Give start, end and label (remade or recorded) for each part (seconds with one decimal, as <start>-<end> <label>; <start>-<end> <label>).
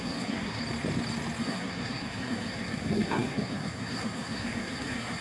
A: 0.0-0.6 remade; 0.6-1.4 recorded; 1.4-5.2 remade